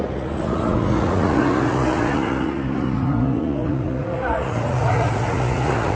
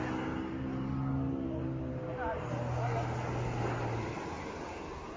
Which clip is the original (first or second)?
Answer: second